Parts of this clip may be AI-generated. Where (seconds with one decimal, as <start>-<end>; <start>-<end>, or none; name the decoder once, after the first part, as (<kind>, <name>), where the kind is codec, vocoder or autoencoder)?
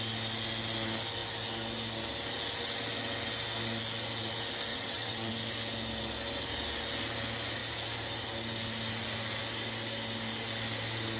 4.7-5.3 (vocoder, WaveNeXt)